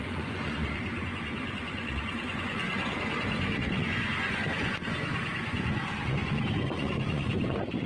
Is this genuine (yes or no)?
no